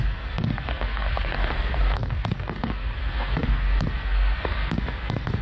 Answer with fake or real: fake